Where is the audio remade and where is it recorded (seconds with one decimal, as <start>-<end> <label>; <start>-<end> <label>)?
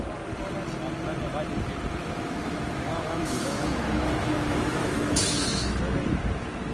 0.0-2.0 recorded; 2.0-5.8 remade; 5.8-6.7 recorded